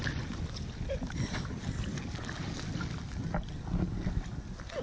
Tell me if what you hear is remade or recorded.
recorded